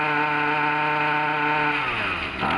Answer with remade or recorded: recorded